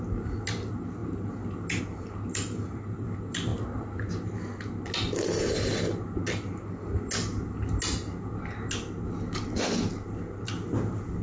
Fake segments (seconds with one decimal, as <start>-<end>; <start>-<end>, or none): none